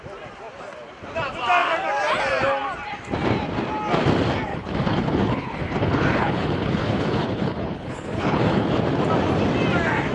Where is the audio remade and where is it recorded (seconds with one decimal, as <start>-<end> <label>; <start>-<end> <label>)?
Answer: 0.0-4.5 recorded; 4.5-8.7 remade; 8.7-10.1 recorded